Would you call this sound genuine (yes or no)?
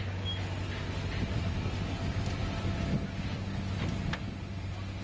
yes